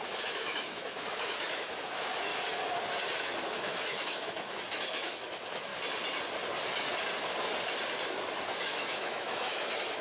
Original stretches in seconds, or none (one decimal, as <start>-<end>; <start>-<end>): 2.3-3.2; 5.7-8.6